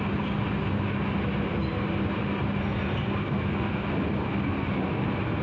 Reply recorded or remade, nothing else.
recorded